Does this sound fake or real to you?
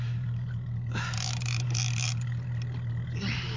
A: real